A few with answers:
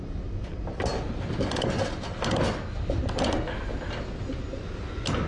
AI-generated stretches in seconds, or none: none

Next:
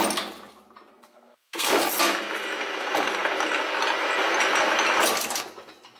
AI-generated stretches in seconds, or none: 0.9-1.8 (codec, SNAC)

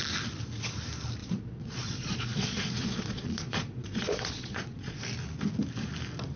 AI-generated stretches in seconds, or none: 1.2-5.0 (vocoder, Vocos)

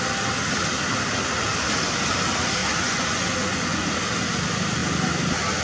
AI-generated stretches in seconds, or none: 2.6-3.9 (vocoder, Vocos)

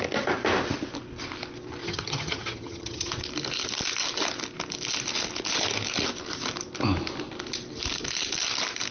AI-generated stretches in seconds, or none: 1.8-3.1 (vocoder, HiFi-GAN)

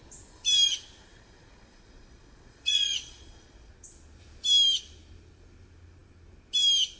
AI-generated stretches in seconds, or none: 1.1-3.7 (vocoder, Vocos)